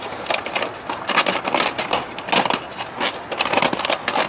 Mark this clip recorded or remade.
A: recorded